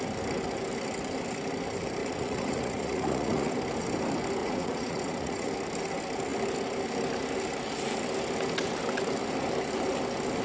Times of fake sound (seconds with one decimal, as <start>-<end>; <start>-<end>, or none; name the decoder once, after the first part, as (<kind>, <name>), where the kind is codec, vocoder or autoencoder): 2.0-3.5 (vocoder, Vocos); 4.4-5.5